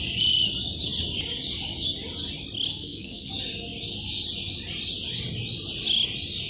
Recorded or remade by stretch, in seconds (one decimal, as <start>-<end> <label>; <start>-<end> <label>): 0.0-2.7 recorded; 2.7-3.3 remade; 3.3-6.5 recorded